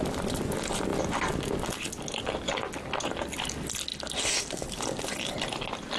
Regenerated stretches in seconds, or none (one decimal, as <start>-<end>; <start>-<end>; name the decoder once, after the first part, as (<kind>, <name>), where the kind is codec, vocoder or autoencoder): none